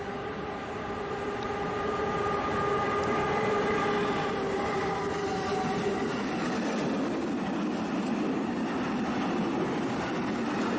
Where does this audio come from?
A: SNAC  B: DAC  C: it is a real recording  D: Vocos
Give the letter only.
C